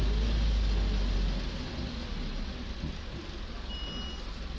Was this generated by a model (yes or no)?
no